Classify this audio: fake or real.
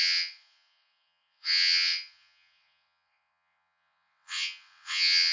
fake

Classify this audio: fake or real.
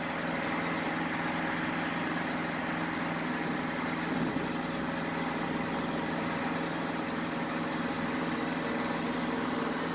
real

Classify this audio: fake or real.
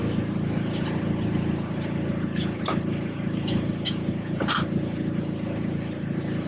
real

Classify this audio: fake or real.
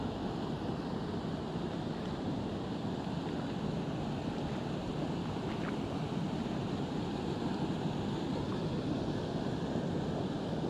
real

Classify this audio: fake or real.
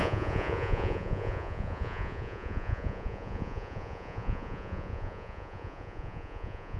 fake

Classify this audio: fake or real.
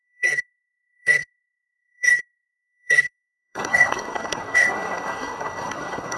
fake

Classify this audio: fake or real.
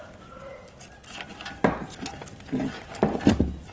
real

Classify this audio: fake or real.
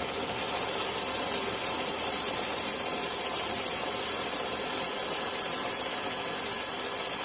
real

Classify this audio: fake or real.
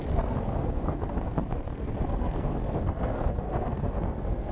fake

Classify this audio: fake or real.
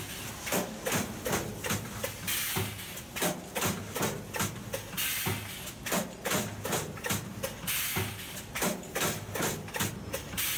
real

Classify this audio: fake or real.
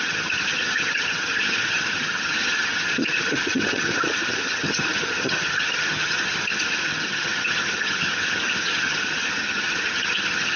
fake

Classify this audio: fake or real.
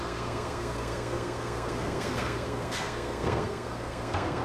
fake